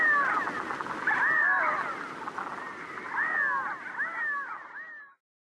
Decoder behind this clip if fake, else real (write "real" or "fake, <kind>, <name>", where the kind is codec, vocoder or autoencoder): real